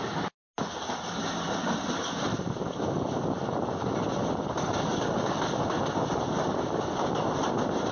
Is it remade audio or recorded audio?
recorded